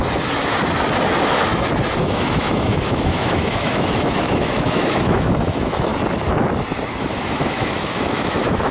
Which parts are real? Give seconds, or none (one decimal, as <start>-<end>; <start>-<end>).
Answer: 0.0-2.0; 5.9-7.0